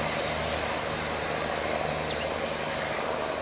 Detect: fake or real real